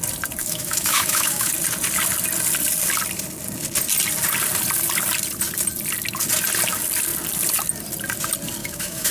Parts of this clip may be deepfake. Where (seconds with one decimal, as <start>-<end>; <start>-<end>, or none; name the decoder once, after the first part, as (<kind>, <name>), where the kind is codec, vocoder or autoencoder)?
0.4-1.5 (autoencoder, DAC-VAE); 8.6-9.1